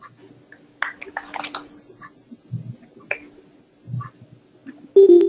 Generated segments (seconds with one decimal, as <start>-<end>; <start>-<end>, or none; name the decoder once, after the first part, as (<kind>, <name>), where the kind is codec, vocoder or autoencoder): none